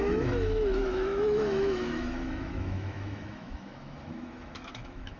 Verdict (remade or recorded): remade